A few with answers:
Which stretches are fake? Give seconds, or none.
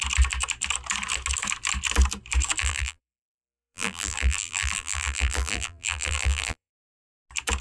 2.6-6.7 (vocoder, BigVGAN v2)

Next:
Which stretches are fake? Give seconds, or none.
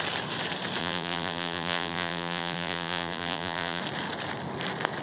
0.8-3.8 (vocoder, BigVGAN v2)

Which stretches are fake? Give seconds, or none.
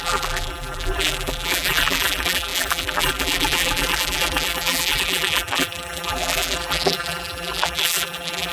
0.0-8.5 (vocoder, BigVGAN v2)